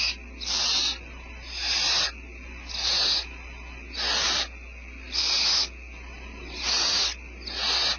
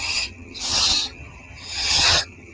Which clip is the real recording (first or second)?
first